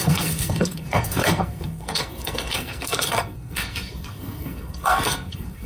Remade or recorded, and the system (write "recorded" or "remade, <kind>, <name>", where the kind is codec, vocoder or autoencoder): remade, codec, SNAC